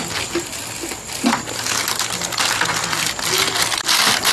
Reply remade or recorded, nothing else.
recorded